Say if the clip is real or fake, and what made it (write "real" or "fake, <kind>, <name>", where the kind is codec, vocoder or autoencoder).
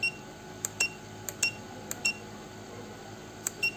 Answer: real